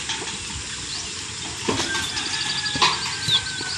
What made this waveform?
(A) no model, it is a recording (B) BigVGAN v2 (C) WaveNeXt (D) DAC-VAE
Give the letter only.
A